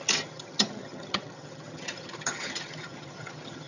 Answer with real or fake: fake